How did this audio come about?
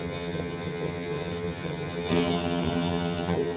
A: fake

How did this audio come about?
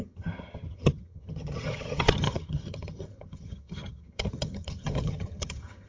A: fake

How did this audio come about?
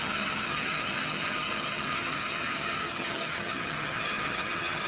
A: fake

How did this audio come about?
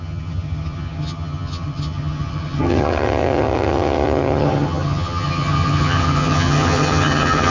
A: fake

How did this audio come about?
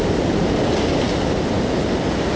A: real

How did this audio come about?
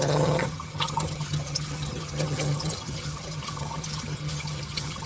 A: fake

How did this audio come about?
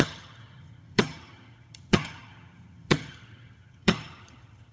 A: fake